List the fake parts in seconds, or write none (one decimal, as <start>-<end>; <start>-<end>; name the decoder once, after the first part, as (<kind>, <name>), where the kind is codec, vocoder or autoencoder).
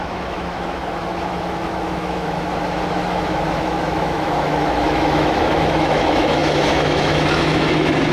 0.0-8.1 (autoencoder, DAC-VAE)